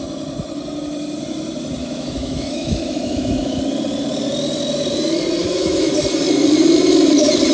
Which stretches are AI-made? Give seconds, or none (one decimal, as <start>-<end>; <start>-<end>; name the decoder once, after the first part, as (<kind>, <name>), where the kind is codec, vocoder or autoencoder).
1.8-3.6 (autoencoder, DAC-VAE); 5.4-5.9